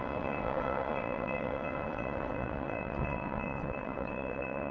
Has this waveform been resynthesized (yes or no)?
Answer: yes